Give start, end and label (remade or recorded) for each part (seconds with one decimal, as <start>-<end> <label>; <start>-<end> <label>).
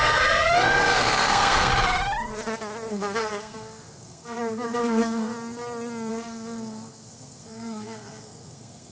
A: 0.0-1.7 remade; 1.7-2.9 recorded; 2.9-5.3 remade; 5.3-6.1 recorded; 6.1-8.9 remade